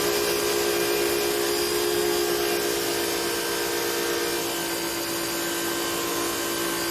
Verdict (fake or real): real